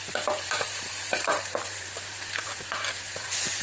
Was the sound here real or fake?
fake